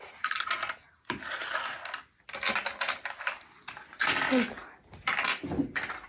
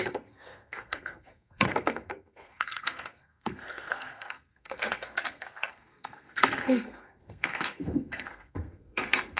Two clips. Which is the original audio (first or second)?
first